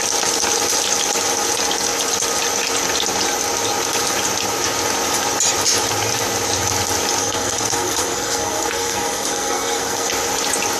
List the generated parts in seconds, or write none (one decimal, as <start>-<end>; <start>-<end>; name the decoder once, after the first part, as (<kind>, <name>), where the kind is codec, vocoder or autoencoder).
7.2-10.1 (codec, SNAC)